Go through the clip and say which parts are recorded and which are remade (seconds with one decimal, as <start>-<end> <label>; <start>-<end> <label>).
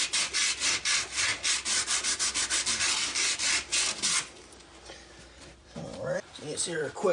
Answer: 0.0-1.3 remade; 1.3-5.2 recorded; 5.2-7.1 remade